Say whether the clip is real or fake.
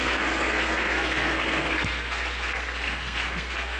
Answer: fake